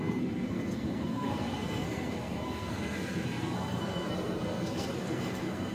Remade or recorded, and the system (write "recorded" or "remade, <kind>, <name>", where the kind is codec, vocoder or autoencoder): remade, codec, SNAC